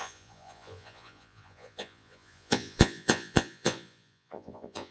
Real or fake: fake